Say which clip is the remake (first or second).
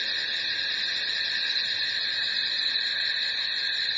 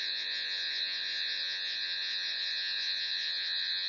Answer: second